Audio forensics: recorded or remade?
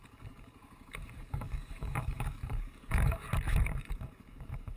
remade